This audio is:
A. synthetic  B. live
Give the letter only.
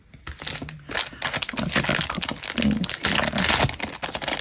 B